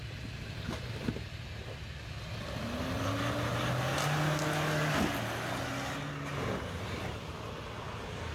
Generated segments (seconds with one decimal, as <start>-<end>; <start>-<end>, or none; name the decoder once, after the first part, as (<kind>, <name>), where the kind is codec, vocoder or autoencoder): 0.0-2.0 (vocoder, BigVGAN v2)